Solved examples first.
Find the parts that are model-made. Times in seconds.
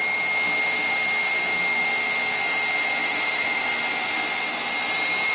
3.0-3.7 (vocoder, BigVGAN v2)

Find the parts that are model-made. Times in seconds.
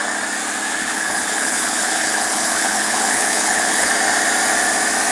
0.8-3.9 (codec, HILCodec)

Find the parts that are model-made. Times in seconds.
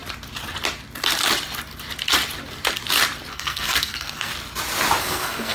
3.3-4.3 (codec, SNAC); 5.0-5.5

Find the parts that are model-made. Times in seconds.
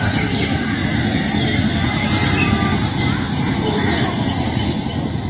none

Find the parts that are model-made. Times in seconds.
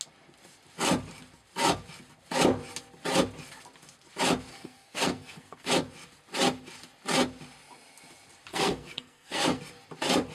4.5-5.7 (codec, SNAC); 8.5-9.6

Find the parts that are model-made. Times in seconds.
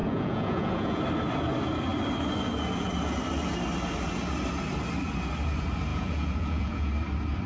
0.0-1.0 (vocoder, Vocos); 5.9-6.9